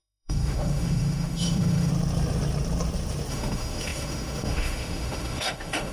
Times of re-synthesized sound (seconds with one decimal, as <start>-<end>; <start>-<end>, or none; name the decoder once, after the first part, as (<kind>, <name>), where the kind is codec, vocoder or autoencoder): 0.0-1.9 (autoencoder, DAC-VAE); 3.3-5.9